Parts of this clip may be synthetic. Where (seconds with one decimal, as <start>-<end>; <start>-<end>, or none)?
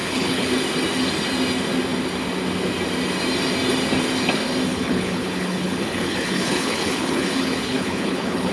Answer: 0.0-0.5; 4.7-8.5